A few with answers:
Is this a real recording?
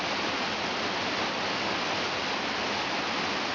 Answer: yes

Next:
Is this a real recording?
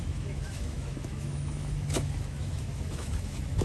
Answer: no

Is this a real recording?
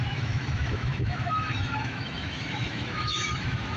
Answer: no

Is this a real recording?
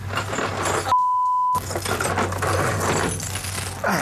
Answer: yes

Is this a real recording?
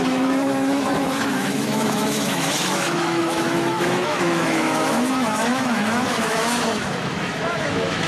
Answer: no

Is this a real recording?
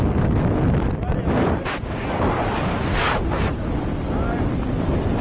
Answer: yes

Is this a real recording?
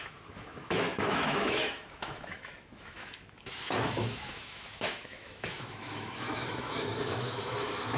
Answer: no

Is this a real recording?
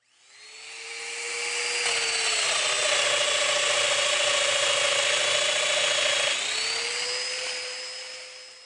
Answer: yes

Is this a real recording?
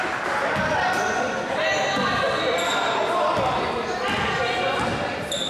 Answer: yes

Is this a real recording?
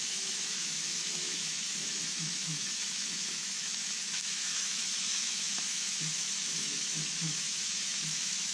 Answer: no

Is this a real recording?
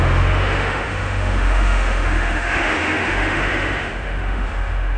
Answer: no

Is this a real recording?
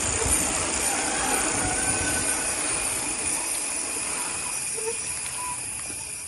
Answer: yes